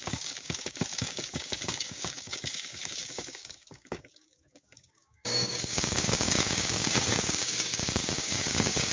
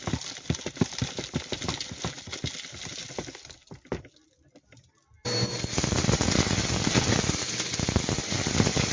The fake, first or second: first